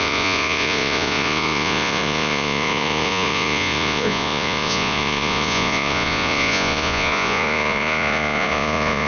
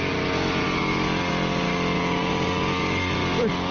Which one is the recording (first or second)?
second